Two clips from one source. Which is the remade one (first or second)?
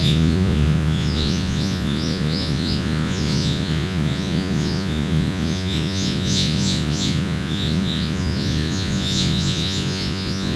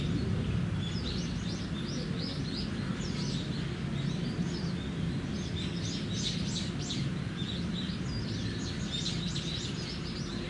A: first